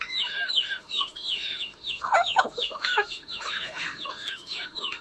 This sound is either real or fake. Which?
fake